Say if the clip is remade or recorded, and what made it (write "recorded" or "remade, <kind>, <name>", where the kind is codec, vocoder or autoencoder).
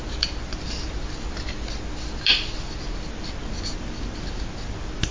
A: recorded